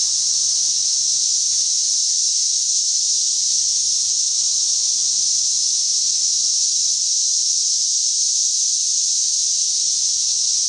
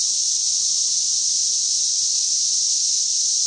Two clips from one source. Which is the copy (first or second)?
first